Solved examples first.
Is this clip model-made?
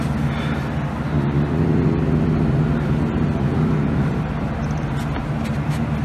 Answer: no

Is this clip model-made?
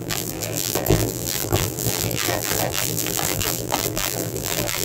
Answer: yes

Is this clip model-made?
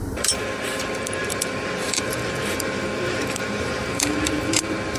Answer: yes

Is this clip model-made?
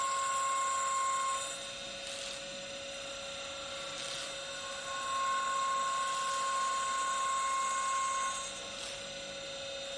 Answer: no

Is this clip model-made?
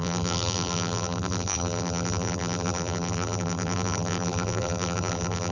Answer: yes